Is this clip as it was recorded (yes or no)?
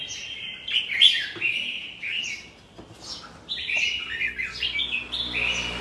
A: yes